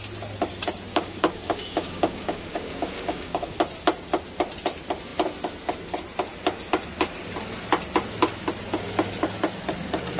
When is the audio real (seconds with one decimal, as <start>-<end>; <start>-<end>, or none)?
0.0-0.9; 3.6-10.2